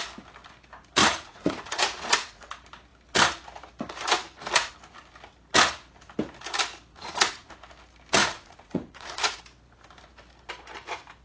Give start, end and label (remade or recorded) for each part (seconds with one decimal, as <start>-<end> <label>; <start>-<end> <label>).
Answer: 0.0-1.0 recorded; 1.0-2.5 remade; 2.5-6.9 recorded; 6.9-7.5 remade; 7.5-8.2 recorded; 8.2-9.4 remade; 9.4-11.2 recorded